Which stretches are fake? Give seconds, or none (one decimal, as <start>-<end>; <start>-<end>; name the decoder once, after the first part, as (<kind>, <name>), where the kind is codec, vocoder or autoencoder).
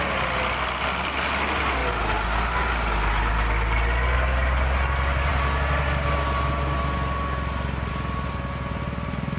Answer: none